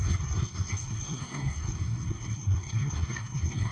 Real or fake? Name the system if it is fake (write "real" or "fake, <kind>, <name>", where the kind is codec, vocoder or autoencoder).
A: fake, codec, SNAC